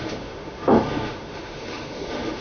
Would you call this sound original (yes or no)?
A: no